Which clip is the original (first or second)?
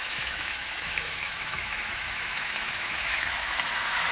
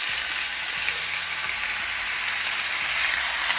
second